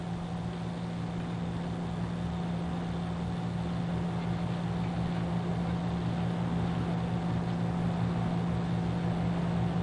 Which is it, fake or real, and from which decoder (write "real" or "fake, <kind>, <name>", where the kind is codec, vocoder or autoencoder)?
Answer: real